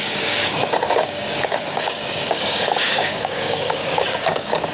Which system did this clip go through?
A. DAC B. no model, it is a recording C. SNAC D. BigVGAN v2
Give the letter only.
A